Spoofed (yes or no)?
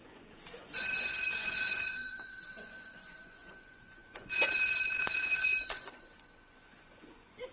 yes